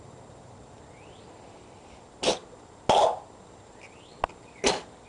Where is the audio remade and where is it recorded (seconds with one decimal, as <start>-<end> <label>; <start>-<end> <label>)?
0.0-5.1 recorded